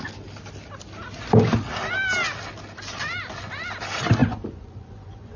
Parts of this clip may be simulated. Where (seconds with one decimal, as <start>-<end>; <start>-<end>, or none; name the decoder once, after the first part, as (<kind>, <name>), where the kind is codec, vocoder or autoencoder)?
4.2-5.4 (vocoder, Vocos)

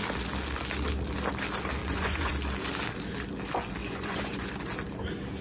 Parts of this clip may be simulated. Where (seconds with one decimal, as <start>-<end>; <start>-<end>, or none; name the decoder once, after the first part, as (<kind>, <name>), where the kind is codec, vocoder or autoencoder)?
1.8-2.3 (vocoder, Vocos); 3.8-4.5

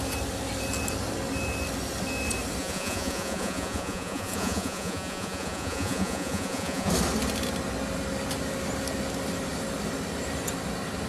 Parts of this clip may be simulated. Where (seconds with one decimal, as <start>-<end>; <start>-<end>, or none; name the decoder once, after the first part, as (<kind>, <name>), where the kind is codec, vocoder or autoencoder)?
2.6-6.9 (vocoder, Vocos)